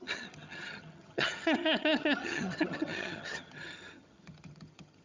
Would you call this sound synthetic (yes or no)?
yes